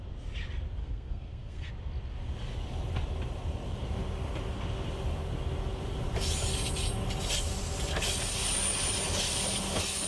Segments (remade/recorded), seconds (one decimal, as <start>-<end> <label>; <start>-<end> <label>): 0.0-0.8 recorded; 0.8-1.7 remade; 1.7-10.1 recorded